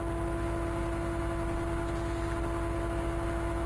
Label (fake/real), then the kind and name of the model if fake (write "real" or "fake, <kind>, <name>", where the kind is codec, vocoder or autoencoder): real